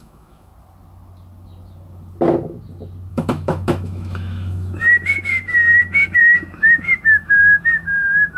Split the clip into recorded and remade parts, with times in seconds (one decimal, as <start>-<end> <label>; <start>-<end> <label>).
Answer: 0.0-0.5 remade; 0.5-3.1 recorded; 3.1-8.4 remade